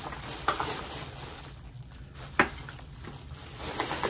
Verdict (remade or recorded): recorded